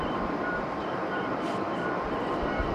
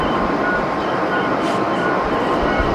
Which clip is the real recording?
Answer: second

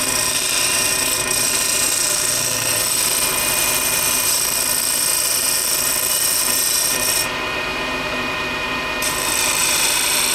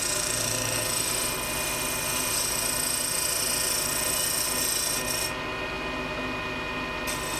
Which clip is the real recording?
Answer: second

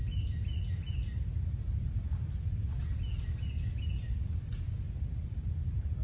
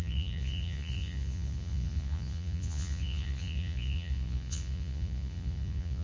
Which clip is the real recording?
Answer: first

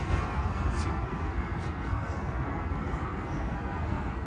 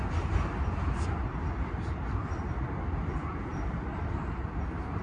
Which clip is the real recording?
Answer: second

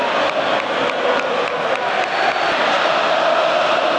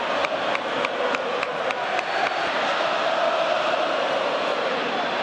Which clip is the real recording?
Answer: first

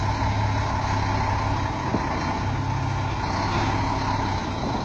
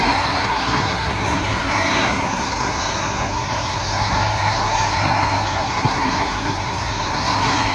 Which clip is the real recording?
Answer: first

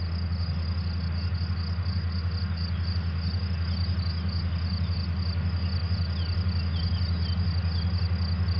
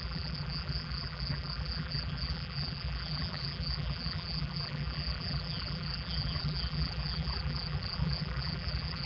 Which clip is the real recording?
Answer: first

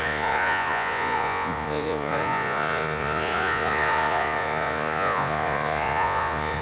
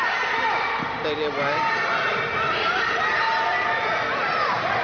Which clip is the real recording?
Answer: second